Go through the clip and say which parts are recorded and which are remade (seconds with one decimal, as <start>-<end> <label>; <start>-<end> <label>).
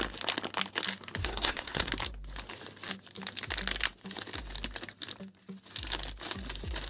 0.0-1.2 recorded; 1.2-1.9 remade; 1.9-6.9 recorded